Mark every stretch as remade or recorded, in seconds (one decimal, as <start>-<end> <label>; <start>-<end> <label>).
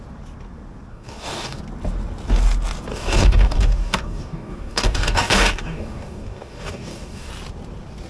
0.0-0.9 recorded; 0.9-1.6 remade; 1.6-2.9 recorded; 2.9-7.3 remade; 7.3-8.1 recorded